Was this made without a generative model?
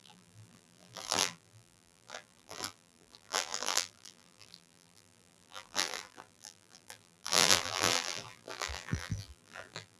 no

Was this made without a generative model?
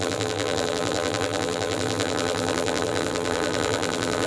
no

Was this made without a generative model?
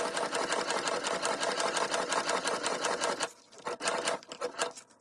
yes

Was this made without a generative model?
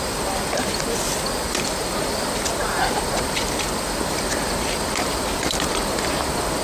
no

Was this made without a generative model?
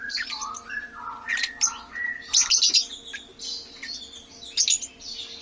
yes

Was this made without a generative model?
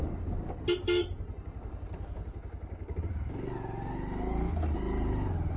yes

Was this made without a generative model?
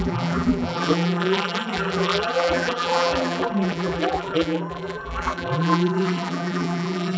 no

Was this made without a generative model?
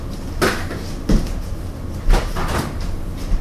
no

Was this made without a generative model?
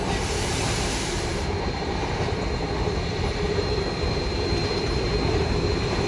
no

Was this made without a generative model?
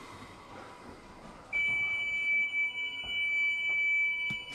yes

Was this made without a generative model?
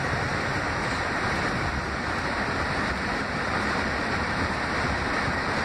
no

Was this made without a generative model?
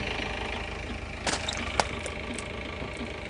yes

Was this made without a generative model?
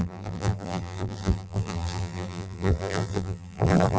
no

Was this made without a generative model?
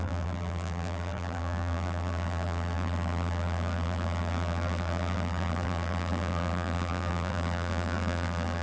no